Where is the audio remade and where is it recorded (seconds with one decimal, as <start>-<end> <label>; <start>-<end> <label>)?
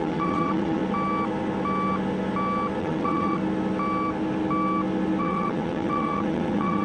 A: 0.0-0.8 remade; 0.8-2.8 recorded; 2.8-3.4 remade; 3.4-5.2 recorded; 5.2-6.8 remade